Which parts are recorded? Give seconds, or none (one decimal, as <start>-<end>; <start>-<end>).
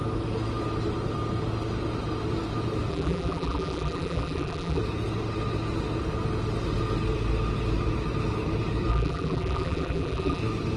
0.0-2.9; 4.8-8.9; 10.4-10.8